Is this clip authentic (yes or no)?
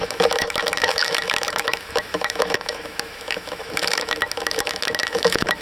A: no